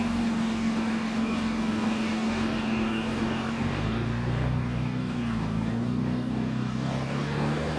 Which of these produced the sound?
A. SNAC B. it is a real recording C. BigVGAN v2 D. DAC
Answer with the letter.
D